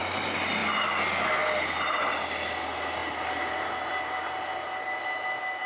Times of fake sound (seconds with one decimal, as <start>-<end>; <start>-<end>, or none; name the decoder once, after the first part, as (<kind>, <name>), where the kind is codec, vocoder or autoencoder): none